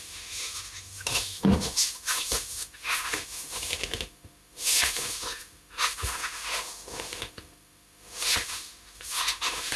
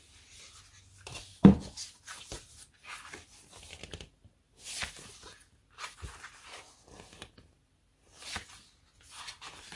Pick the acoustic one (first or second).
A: second